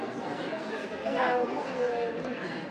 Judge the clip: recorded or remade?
remade